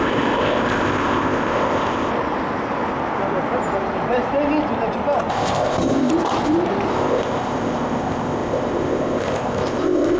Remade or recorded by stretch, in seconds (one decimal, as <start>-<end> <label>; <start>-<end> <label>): 0.0-2.1 remade; 2.1-5.3 recorded; 5.3-6.1 remade; 6.1-6.9 recorded; 6.9-10.2 remade